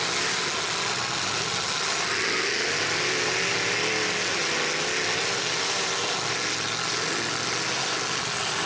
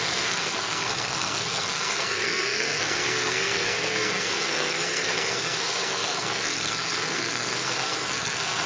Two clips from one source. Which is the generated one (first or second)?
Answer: second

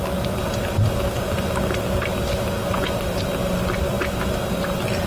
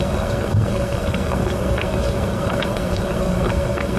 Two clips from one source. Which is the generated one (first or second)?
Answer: second